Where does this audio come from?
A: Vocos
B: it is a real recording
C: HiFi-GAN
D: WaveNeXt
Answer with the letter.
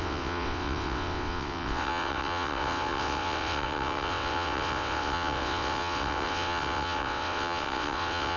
D